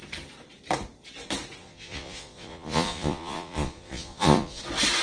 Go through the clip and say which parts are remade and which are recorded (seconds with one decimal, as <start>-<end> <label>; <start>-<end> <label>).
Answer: 0.0-1.6 recorded; 1.6-4.6 remade; 4.6-5.0 recorded